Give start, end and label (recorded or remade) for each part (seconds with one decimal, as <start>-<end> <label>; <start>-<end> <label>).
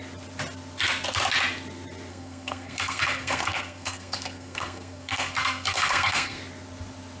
0.0-2.1 recorded; 2.1-6.4 remade; 6.4-7.2 recorded